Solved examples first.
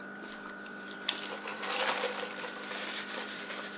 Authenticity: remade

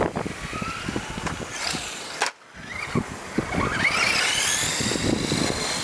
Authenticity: recorded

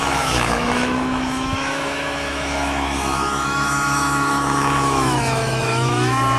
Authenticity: remade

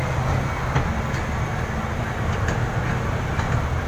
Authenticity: recorded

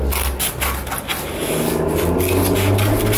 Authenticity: recorded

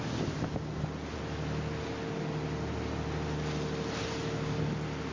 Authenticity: recorded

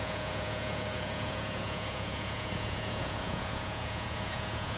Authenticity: remade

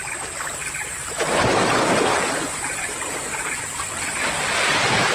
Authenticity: remade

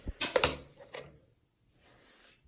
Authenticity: recorded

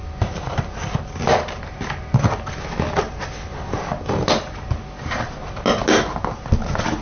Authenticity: recorded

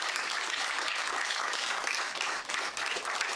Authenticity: remade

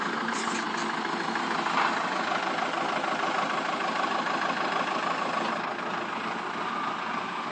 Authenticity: recorded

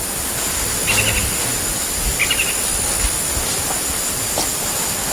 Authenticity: recorded